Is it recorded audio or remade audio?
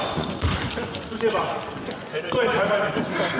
remade